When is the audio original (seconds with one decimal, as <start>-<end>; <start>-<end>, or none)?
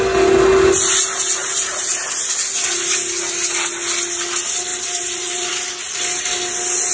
0.0-1.4; 1.9-4.7; 5.5-6.9